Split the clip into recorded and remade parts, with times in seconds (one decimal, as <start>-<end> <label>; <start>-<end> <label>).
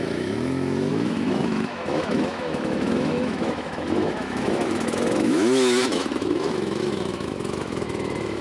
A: 0.0-8.4 remade